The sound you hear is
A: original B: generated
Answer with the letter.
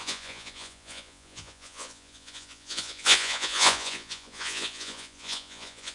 B